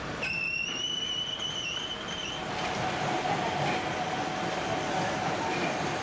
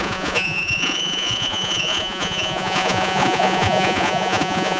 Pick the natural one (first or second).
first